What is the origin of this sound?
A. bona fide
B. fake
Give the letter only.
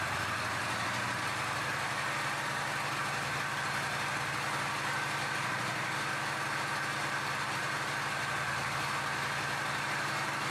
A